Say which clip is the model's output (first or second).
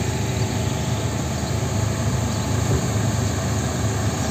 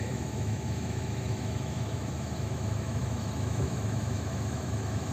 second